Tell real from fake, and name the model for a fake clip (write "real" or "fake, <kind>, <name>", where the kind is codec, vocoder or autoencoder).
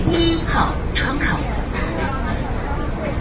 fake, vocoder, BigVGAN v2